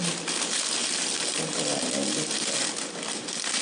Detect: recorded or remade recorded